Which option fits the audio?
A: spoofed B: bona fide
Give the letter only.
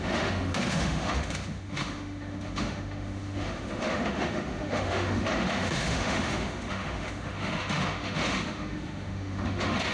A